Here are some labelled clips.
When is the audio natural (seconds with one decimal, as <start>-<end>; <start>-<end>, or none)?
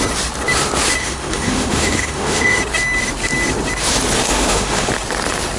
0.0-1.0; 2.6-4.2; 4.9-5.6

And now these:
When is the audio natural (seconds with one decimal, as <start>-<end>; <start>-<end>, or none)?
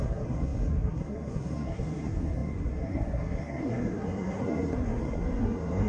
none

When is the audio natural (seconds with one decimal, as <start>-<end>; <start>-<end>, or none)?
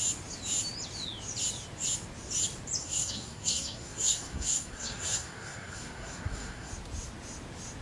0.0-2.8; 6.7-7.8